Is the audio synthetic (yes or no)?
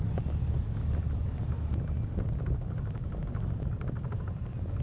no